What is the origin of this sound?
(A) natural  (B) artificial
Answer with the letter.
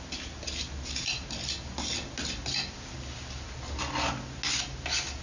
A